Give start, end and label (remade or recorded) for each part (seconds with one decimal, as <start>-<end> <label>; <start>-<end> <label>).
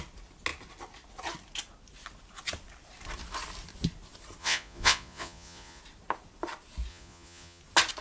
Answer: 0.0-4.4 recorded; 4.4-5.8 remade; 5.8-6.9 recorded; 6.9-7.6 remade; 7.6-8.0 recorded